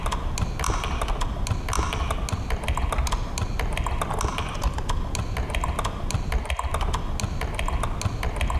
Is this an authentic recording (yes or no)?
yes